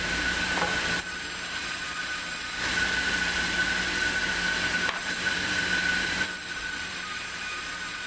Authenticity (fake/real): fake